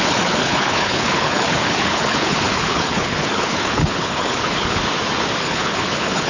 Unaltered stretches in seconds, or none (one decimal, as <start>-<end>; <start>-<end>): 4.8-5.4